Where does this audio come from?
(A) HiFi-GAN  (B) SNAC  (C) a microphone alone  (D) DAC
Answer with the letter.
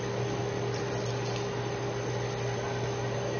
C